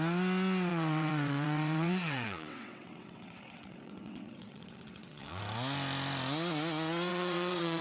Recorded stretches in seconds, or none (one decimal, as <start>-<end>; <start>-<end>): 0.0-0.7; 5.4-7.1